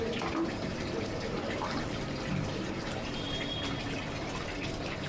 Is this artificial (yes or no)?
yes